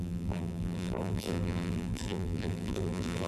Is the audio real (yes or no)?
no